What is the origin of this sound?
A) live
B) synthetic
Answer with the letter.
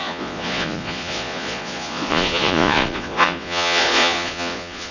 B